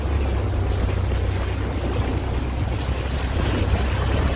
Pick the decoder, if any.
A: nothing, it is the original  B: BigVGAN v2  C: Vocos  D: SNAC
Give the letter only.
A